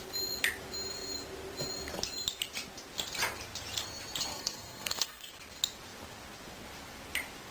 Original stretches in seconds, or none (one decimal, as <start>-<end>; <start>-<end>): 0.0-4.3; 5.3-7.5